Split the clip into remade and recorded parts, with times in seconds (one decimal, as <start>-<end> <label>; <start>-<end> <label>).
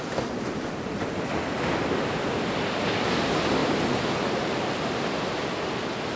0.0-6.2 recorded